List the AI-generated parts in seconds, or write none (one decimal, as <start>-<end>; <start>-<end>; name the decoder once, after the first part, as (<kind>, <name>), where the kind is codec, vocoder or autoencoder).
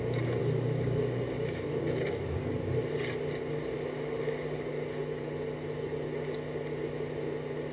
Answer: 0.4-2.6 (codec, DAC)